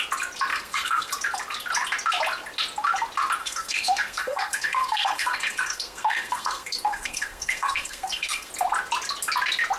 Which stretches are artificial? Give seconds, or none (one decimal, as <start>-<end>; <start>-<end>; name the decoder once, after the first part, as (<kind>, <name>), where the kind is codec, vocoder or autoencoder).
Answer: 0.5-1.1 (codec, SNAC); 3.4-8.5